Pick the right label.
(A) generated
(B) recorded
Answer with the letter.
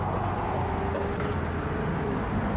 B